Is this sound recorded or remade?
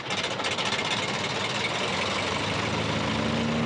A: recorded